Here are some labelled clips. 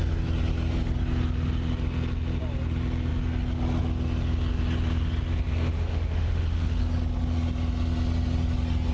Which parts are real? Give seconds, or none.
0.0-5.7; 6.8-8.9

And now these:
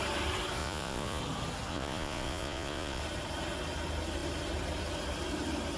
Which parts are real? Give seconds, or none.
0.0-0.6; 1.2-1.7; 3.0-5.8

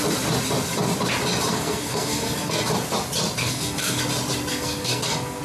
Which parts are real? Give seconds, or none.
0.0-1.5; 2.6-3.4; 4.0-4.5

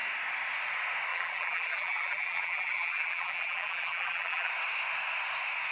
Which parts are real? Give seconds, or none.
0.0-1.1; 4.5-5.7